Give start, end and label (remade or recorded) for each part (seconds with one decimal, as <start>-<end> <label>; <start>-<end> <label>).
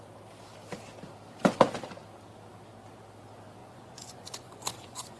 0.0-3.6 recorded; 3.6-5.2 remade